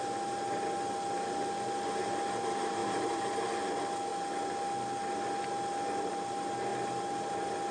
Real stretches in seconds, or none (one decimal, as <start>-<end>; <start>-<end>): 0.0-2.8; 3.4-7.7